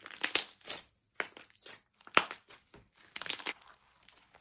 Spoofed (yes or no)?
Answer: no